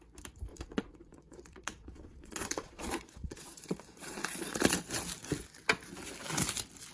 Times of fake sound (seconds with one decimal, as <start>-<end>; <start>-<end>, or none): 0.5-4.6